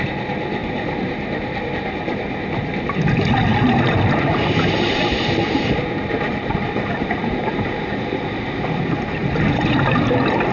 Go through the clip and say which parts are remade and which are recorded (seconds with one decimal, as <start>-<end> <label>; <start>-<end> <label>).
0.0-0.6 recorded; 0.6-1.6 remade; 1.6-3.5 recorded; 3.5-8.0 remade; 8.0-9.2 recorded; 9.2-9.7 remade; 9.7-10.5 recorded